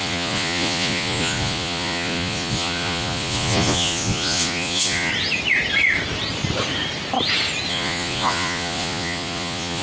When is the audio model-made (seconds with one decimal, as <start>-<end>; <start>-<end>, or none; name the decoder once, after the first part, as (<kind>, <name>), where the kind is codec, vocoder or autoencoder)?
0.0-5.1 (vocoder, Vocos); 7.7-9.8